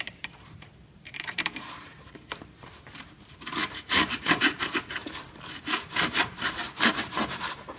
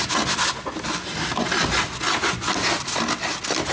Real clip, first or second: second